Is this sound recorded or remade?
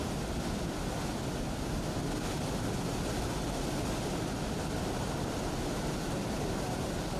recorded